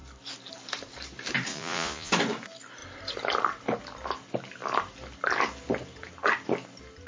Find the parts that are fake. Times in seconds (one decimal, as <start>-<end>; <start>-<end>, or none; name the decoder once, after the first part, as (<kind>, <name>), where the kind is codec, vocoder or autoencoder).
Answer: 1.5-2.1 (vocoder, Vocos)